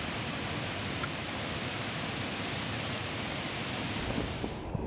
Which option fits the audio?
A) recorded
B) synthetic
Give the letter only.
A